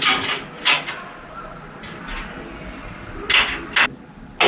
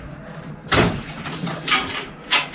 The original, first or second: first